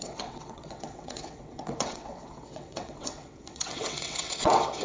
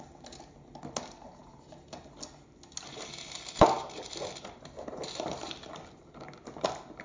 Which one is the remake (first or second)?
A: first